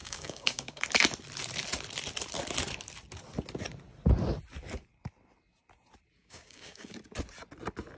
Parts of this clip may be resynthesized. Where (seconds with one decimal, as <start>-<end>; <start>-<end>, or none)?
0.0-0.8; 6.2-6.9